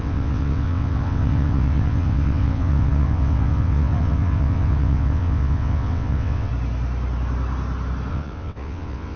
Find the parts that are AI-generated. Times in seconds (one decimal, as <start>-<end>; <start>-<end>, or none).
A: 0.0-6.5; 8.1-9.2